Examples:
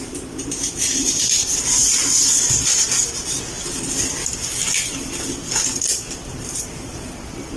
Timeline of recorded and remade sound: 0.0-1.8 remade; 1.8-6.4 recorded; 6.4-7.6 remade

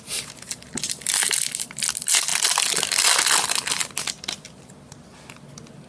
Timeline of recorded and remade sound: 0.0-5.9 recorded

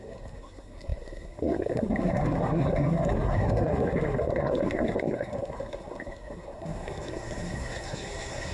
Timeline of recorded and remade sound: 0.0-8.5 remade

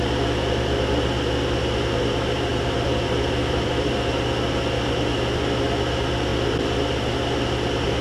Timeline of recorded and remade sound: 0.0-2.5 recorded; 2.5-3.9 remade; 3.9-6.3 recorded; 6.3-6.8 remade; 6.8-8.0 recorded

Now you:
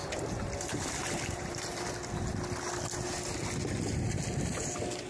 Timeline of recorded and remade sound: 0.0-1.9 remade; 1.9-5.1 recorded

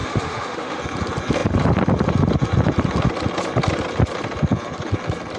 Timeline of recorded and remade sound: 0.0-0.8 remade; 0.8-5.4 recorded